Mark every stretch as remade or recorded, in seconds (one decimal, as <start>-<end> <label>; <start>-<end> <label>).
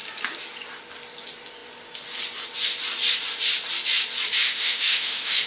0.0-4.4 recorded; 4.4-5.5 remade